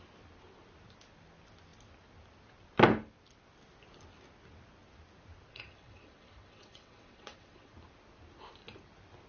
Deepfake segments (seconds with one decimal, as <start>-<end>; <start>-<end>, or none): 5.5-7.7